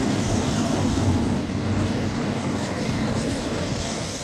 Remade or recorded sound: remade